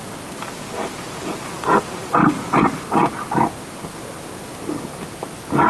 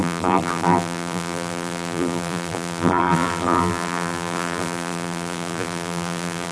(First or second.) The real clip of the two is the first